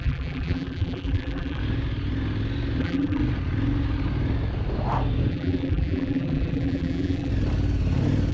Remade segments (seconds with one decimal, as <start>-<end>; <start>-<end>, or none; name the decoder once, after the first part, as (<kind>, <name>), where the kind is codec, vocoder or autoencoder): 0.0-1.6 (vocoder, BigVGAN v2); 2.8-3.2; 5.3-7.3